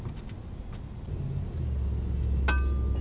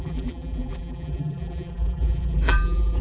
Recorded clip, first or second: first